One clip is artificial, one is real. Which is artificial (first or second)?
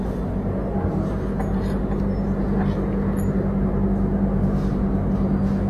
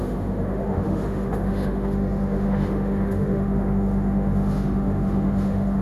second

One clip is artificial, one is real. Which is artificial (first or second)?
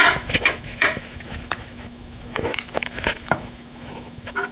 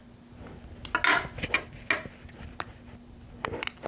first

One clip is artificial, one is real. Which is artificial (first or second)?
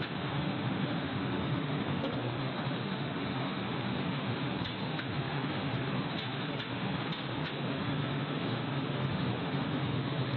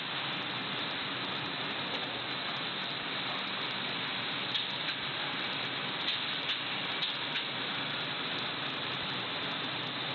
first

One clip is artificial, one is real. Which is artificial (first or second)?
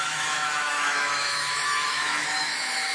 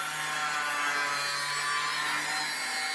first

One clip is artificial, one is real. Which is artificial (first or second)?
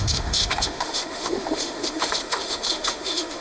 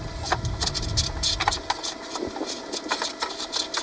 first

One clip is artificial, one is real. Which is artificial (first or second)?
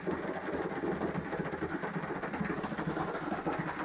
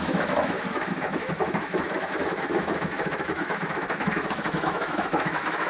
second